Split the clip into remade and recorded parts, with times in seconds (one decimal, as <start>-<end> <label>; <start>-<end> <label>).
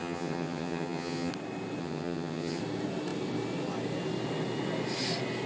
0.0-1.3 remade; 1.3-1.8 recorded; 1.8-2.6 remade; 2.6-5.5 recorded